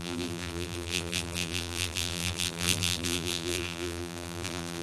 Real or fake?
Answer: fake